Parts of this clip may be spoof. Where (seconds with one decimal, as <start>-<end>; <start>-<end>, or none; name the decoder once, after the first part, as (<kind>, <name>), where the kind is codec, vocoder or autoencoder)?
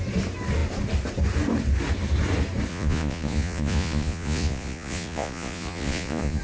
2.7-6.4 (vocoder, Vocos)